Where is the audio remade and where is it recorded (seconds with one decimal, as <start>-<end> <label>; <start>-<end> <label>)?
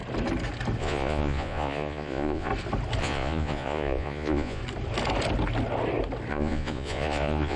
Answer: 0.0-0.8 recorded; 0.8-2.5 remade; 2.5-3.0 recorded; 3.0-4.6 remade; 4.6-6.3 recorded; 6.3-7.6 remade